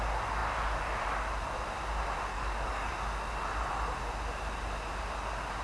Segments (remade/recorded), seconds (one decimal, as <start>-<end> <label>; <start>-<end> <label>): 0.0-2.3 recorded; 2.3-2.9 remade; 2.9-5.6 recorded